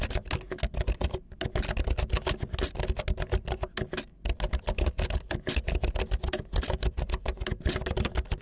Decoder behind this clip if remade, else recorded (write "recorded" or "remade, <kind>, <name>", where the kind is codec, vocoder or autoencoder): recorded